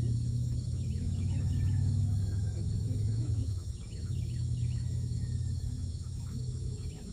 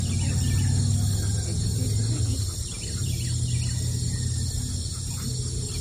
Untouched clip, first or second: second